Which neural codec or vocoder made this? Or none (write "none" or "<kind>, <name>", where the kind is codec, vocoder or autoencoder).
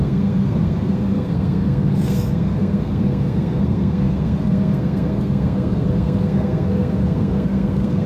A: codec, SNAC